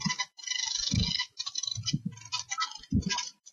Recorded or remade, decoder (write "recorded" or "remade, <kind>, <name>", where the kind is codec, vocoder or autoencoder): remade, vocoder, BigVGAN v2